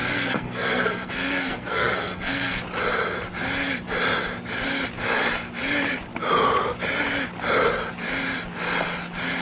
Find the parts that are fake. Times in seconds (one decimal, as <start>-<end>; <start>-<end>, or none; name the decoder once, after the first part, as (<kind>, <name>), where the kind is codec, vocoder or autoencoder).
0.0-2.6 (codec, SNAC)

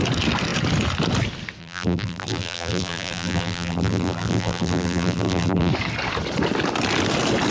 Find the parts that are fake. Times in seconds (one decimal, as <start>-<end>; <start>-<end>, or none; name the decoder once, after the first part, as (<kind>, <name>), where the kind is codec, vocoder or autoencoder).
1.6-5.7 (vocoder, BigVGAN v2)

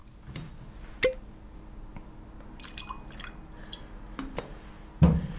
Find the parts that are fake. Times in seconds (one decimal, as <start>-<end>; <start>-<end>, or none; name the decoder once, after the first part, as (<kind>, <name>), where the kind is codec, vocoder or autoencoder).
none

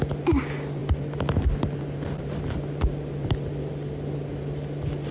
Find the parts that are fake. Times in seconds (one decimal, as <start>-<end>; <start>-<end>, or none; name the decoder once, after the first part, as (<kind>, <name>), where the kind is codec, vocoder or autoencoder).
none

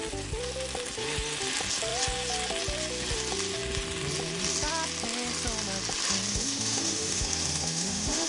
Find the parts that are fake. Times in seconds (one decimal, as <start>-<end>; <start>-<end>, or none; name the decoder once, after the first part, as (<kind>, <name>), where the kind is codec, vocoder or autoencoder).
6.3-8.3 (autoencoder, DAC-VAE)

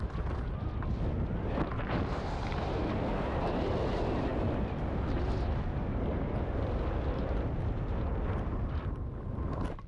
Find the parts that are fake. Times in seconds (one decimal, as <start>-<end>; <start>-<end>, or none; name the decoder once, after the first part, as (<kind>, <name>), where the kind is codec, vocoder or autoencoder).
none

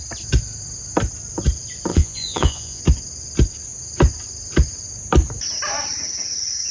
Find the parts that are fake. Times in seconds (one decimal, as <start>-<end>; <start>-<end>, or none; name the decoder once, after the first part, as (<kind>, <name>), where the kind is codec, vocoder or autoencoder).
1.9-2.8 (vocoder, Vocos)

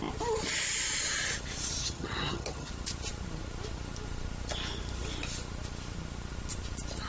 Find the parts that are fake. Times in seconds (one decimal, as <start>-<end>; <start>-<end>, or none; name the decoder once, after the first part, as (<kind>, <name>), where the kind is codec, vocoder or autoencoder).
1.8-2.7 (vocoder, HiFi-GAN)